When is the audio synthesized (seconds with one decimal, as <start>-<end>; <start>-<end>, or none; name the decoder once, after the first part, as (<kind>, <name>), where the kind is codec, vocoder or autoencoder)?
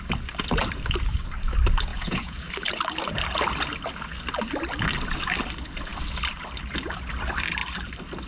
1.9-2.5 (vocoder, Vocos)